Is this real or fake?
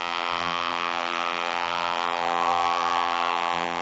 fake